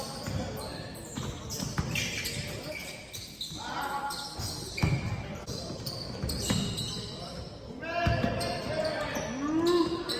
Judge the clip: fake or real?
real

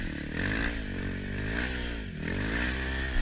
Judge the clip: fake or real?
real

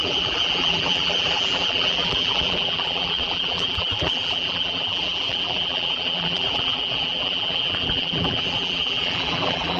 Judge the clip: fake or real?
fake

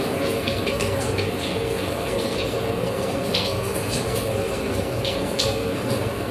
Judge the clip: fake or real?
fake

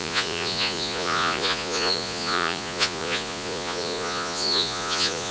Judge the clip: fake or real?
fake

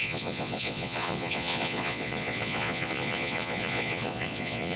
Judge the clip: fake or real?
fake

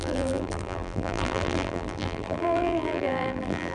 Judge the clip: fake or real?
fake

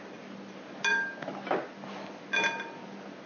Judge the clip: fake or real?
real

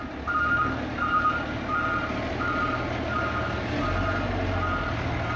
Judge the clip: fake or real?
real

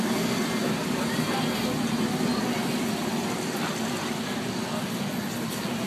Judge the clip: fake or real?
real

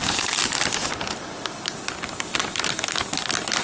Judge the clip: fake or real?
real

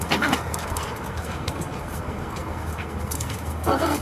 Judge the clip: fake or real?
fake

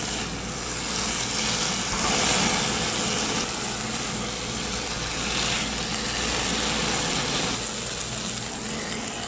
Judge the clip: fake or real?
real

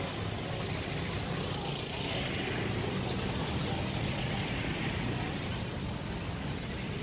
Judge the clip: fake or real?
real